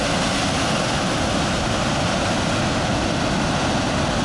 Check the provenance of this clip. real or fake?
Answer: real